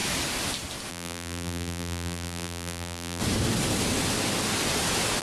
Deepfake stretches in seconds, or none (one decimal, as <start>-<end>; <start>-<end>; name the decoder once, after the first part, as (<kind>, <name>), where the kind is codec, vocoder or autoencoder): 0.9-3.2 (vocoder, BigVGAN v2)